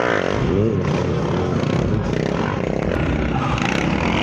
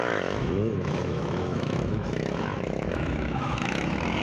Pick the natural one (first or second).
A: first